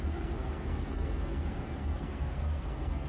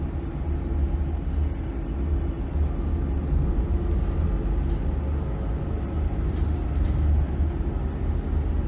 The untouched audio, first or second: second